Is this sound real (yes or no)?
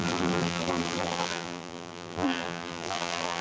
no